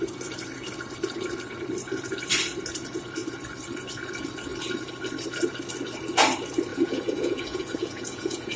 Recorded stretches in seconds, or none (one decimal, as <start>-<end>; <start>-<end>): 0.0-6.7